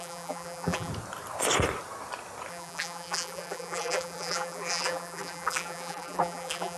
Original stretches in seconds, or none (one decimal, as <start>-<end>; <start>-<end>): 0.9-2.5